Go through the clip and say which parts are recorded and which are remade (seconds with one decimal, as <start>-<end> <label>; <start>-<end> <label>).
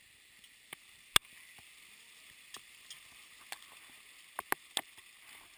0.0-5.6 recorded